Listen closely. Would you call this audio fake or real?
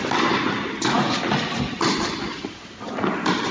real